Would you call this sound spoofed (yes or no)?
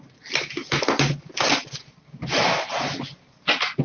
no